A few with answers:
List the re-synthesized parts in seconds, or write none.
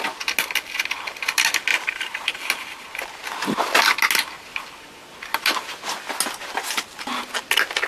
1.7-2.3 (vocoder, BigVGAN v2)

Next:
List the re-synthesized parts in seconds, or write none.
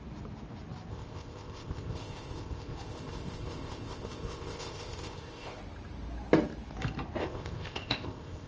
0.9-5.6 (codec, ZipCodec); 7.2-8.5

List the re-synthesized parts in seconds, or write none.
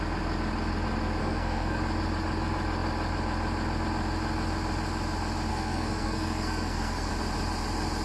1.2-1.8 (codec, SNAC); 5.5-7.1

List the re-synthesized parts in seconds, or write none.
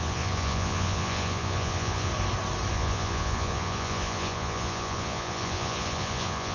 0.0-2.1 (vocoder, Vocos); 2.7-6.5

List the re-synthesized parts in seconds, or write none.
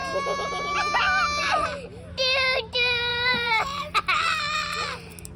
0.0-0.7 (vocoder, BigVGAN v2); 3.1-3.8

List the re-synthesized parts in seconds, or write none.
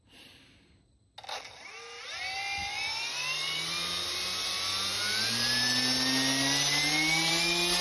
none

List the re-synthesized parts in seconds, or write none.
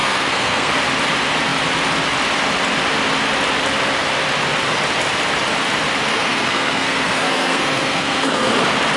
0.0-0.7 (codec, SNAC); 6.1-8.5